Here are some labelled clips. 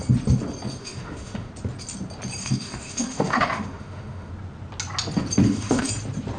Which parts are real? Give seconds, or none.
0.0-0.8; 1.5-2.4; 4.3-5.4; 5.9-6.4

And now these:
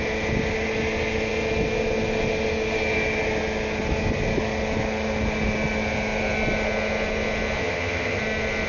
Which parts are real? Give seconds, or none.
0.0-7.6; 8.2-8.7

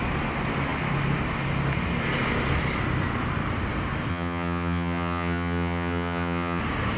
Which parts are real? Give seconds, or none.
0.0-4.1; 6.6-7.0

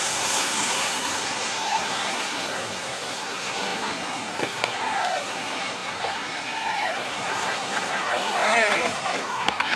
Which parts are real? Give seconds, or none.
none